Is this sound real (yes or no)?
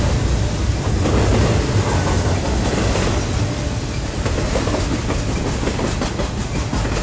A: yes